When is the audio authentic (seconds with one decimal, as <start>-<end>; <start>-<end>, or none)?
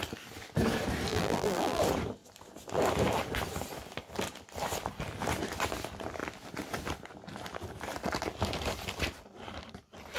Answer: 0.0-1.1; 1.8-10.2